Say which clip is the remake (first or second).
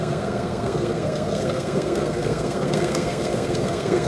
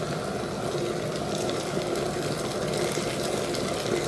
first